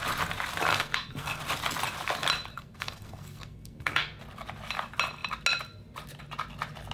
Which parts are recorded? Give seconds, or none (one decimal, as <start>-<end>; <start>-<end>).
0.0-0.7; 1.4-2.5; 4.2-6.9